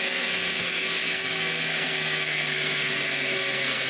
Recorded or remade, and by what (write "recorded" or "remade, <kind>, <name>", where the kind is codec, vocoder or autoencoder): remade, codec, SNAC